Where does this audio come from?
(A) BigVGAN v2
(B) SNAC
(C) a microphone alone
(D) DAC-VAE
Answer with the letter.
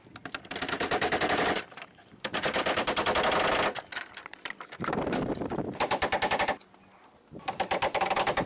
A